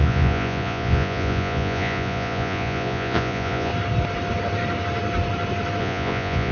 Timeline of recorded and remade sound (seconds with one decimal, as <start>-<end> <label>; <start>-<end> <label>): 0.0-3.7 remade; 3.7-5.8 recorded; 5.8-6.5 remade